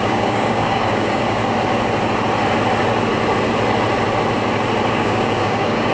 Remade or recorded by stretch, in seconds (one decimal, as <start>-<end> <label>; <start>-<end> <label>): 0.0-1.4 remade; 1.4-4.9 recorded; 4.9-5.9 remade